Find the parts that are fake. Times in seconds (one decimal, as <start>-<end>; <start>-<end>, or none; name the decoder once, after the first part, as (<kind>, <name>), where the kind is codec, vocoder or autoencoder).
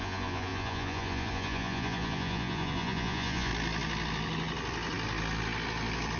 0.0-3.5 (vocoder, Vocos)